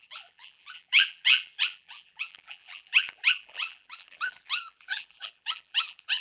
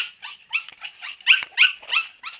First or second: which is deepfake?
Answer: first